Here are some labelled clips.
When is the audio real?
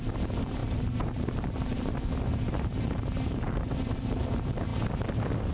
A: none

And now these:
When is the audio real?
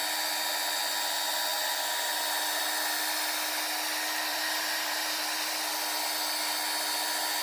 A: 0.0-4.3; 5.6-7.4